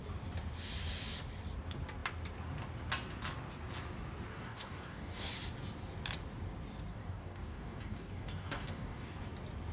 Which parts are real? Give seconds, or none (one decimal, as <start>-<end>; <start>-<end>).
0.0-4.3; 5.3-6.9; 9.2-9.7